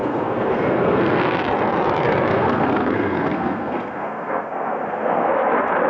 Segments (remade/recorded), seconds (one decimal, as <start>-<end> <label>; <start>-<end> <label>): 0.0-1.4 remade; 1.4-2.3 recorded; 2.3-5.3 remade; 5.3-5.9 recorded